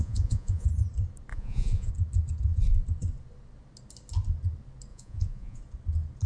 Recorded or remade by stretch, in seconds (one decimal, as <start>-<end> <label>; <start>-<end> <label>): 0.0-0.7 remade; 0.7-1.3 recorded; 1.3-1.9 remade; 1.9-4.9 recorded; 4.9-5.6 remade; 5.6-6.3 recorded